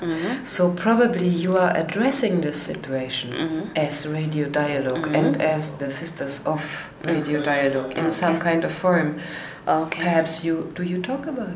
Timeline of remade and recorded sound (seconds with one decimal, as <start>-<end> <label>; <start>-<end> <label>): 0.0-5.5 recorded; 5.5-6.9 remade; 6.9-11.6 recorded